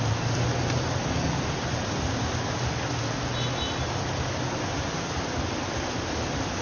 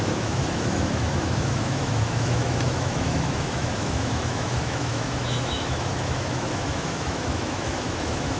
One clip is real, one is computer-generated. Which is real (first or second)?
first